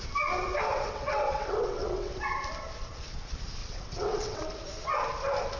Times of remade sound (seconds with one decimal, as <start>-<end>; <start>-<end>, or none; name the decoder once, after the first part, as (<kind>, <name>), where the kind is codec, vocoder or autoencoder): 0.7-2.2 (vocoder, WaveNeXt); 3.6-4.4